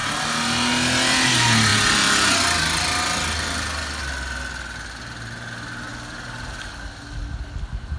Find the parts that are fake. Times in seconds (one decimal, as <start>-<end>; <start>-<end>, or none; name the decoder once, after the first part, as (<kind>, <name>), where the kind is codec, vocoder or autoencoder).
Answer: none